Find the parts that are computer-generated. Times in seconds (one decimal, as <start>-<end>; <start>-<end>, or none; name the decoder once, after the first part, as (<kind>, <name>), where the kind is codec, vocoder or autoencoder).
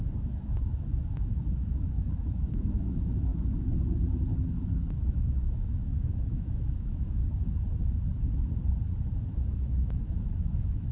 0.0-3.3 (autoencoder, DAC-VAE); 4.5-7.2; 9.1-10.9